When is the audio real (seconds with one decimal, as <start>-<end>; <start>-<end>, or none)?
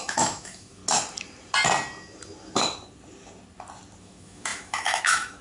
0.8-4.0